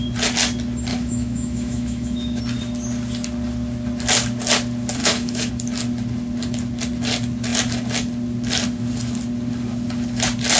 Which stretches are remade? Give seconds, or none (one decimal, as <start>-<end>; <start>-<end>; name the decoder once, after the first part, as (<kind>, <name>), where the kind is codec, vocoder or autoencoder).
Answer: 0.9-2.4 (autoencoder, DAC-VAE); 5.0-5.5